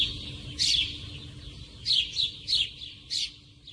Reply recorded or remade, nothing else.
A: recorded